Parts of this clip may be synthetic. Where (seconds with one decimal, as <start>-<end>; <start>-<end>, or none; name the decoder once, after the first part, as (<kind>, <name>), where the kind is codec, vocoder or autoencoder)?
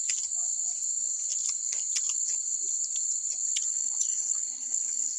3.7-5.2 (codec, HILCodec)